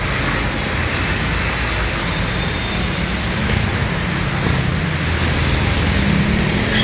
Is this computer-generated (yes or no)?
no